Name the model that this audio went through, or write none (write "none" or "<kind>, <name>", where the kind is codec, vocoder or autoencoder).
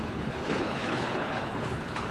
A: codec, HILCodec